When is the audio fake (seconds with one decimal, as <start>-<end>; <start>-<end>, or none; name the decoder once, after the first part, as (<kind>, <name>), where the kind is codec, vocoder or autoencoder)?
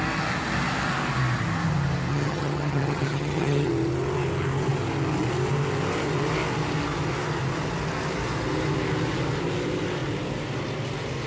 2.1-3.7 (vocoder, HiFi-GAN)